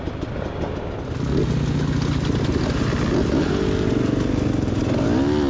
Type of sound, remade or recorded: recorded